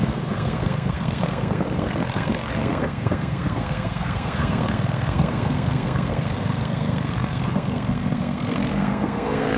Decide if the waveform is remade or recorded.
remade